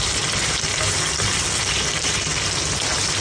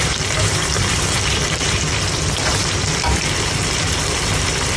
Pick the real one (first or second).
first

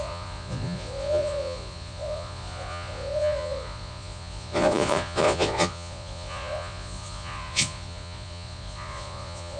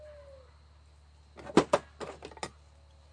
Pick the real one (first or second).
second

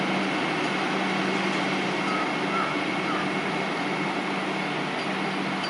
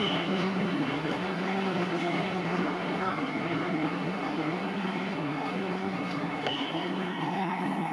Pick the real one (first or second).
first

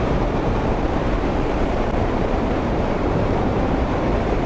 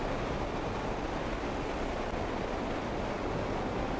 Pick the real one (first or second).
second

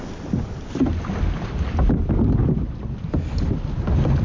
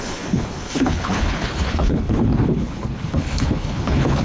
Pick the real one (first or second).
first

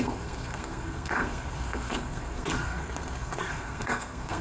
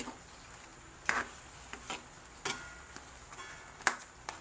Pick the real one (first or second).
second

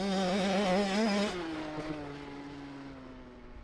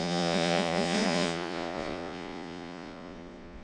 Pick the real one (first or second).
first